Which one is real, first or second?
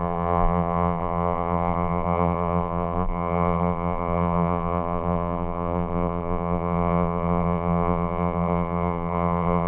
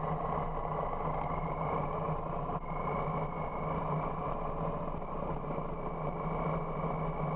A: second